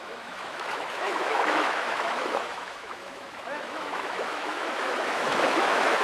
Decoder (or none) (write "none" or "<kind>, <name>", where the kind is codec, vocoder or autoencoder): autoencoder, DAC-VAE